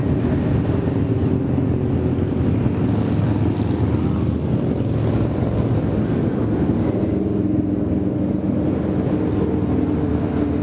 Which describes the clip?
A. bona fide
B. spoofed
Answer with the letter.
A